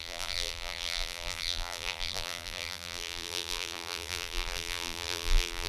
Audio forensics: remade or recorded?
remade